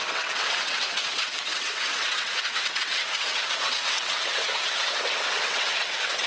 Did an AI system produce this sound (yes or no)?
yes